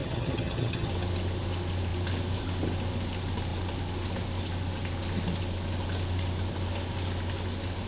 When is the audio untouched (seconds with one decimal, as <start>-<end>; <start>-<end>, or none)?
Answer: 0.9-7.9

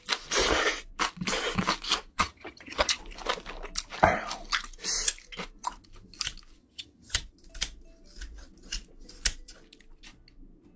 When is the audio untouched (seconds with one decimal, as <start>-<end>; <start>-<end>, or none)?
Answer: 0.0-2.1; 3.0-6.6; 7.2-10.8